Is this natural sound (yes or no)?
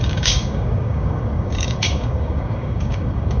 no